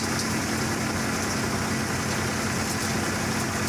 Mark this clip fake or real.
real